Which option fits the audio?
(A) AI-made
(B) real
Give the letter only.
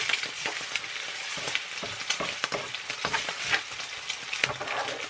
B